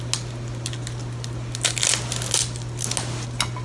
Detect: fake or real real